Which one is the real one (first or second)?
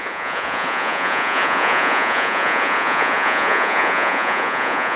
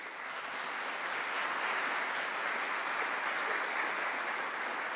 second